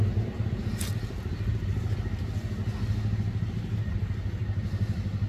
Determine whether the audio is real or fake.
real